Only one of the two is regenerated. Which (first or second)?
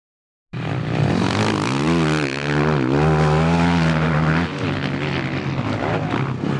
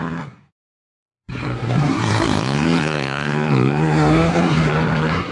second